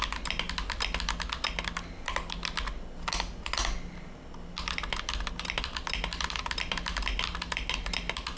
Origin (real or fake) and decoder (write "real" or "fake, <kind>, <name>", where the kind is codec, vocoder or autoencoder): real